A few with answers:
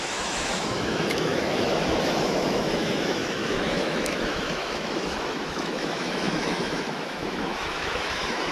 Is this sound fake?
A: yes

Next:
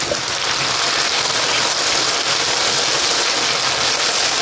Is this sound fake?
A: no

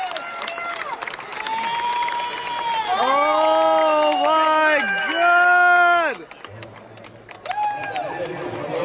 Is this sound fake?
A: no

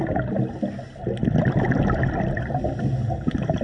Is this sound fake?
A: no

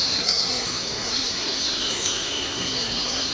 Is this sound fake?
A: yes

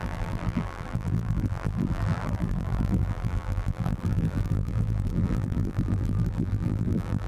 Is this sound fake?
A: yes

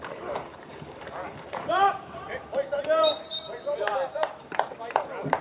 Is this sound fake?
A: yes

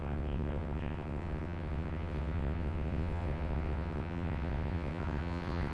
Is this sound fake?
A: yes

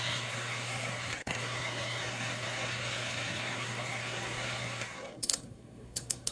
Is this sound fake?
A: yes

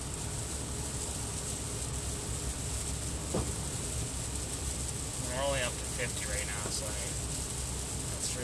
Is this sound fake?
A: no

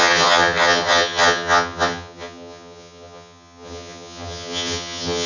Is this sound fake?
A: yes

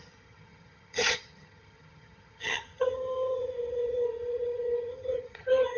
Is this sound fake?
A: yes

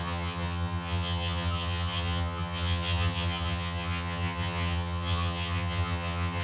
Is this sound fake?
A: yes